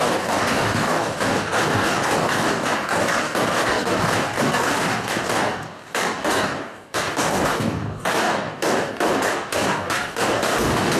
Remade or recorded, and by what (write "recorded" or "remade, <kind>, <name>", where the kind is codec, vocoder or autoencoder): remade, codec, DAC